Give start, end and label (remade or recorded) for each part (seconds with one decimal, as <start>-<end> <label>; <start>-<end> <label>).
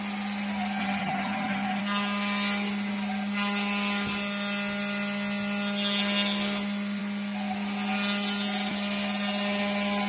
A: 0.0-0.8 recorded; 0.8-1.8 remade; 1.8-10.1 recorded